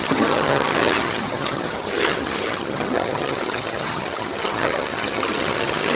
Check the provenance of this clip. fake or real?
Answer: fake